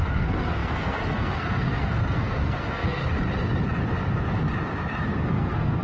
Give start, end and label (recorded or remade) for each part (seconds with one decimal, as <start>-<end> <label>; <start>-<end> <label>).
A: 0.0-3.0 remade; 3.0-5.2 recorded; 5.2-5.8 remade